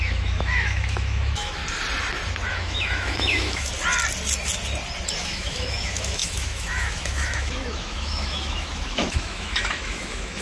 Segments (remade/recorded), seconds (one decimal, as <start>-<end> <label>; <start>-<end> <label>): 0.0-1.6 remade; 1.6-2.5 recorded; 2.5-3.7 remade; 3.7-5.2 recorded; 5.2-10.4 remade